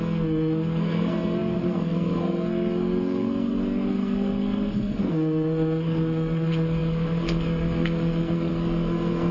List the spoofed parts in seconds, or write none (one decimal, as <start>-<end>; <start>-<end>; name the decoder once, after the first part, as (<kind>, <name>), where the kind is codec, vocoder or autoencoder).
0.0-9.3 (codec, SNAC)